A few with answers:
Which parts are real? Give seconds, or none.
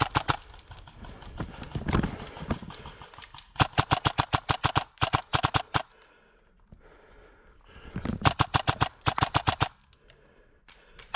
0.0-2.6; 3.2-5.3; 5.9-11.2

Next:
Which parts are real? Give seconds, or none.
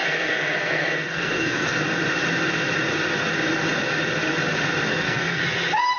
1.8-4.9; 5.4-6.0